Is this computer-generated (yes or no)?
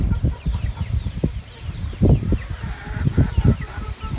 no